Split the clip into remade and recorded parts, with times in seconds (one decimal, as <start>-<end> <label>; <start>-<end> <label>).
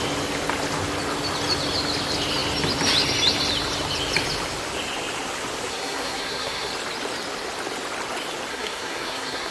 0.0-5.7 recorded; 5.7-6.7 remade; 6.7-8.5 recorded; 8.5-9.5 remade